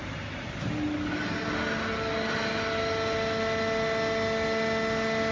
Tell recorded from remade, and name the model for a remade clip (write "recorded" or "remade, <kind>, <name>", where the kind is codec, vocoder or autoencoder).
recorded